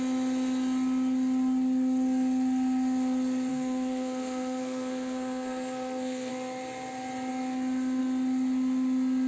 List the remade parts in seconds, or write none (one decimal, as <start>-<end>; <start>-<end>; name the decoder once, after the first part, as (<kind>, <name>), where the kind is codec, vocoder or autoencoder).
3.5-6.3 (codec, SNAC)